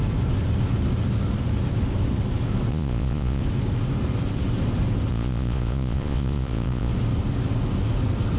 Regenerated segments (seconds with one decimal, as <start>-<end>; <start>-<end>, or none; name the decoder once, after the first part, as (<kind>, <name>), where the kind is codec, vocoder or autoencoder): 2.7-3.4 (vocoder, Vocos); 5.1-6.9